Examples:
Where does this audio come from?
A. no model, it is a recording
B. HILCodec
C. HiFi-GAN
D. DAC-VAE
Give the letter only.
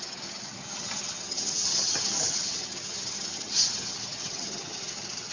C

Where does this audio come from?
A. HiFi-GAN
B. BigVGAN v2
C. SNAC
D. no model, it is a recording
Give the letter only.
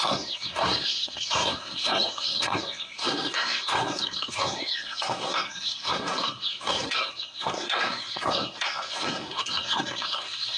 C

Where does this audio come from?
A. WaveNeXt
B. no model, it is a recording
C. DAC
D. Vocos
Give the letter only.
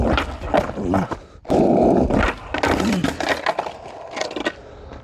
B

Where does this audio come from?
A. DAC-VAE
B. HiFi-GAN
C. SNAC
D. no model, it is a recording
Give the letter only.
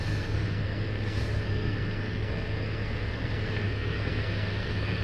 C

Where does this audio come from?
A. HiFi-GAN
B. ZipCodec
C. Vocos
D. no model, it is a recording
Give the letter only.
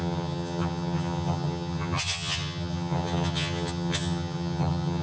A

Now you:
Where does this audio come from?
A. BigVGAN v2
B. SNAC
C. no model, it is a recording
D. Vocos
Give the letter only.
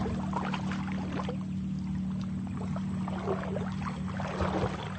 C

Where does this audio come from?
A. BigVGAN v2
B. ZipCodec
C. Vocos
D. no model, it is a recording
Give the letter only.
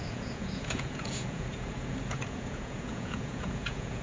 C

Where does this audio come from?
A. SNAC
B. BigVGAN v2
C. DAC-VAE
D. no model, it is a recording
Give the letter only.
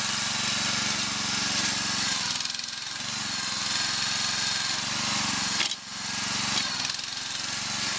D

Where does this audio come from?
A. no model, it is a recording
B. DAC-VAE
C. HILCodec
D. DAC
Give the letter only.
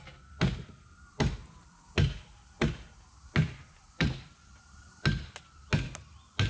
A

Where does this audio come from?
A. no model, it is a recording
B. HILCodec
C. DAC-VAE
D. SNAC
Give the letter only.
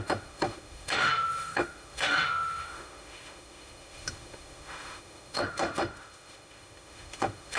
C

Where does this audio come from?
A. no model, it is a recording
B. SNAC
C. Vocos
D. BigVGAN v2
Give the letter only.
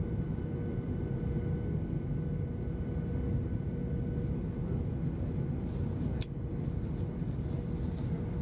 A